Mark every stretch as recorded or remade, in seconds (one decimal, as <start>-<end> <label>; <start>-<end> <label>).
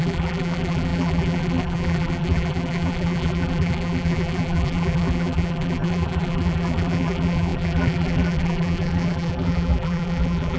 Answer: 0.0-10.6 remade